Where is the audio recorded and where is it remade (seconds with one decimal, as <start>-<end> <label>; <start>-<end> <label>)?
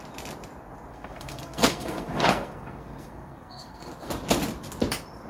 0.0-0.9 recorded; 0.9-4.1 remade; 4.1-5.3 recorded